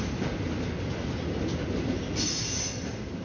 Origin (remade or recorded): recorded